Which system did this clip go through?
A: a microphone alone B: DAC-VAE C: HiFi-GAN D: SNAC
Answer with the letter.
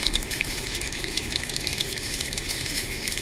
B